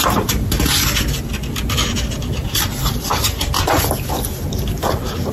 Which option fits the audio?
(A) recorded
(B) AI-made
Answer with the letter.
A